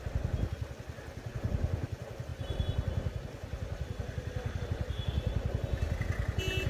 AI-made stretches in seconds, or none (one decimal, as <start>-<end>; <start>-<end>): none